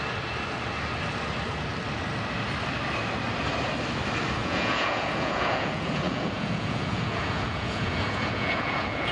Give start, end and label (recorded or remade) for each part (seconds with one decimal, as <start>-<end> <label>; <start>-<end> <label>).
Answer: 0.0-4.4 recorded; 4.4-9.1 remade